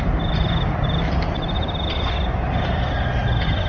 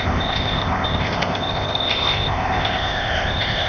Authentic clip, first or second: first